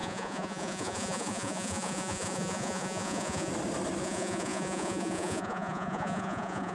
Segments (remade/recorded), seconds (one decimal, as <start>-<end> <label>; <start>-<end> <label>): 0.0-3.5 remade; 3.5-4.0 recorded; 4.0-6.7 remade